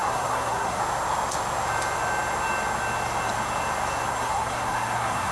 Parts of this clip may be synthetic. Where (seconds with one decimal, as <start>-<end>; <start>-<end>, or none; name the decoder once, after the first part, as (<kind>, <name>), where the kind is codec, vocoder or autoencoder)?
0.0-0.8 (codec, SNAC); 4.1-5.3